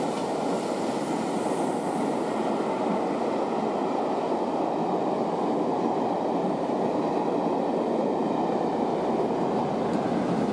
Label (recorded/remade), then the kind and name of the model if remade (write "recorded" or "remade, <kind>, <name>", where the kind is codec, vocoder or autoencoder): recorded